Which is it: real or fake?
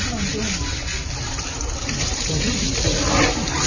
real